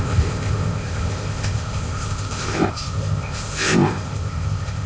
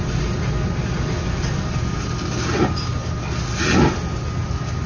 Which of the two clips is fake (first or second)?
first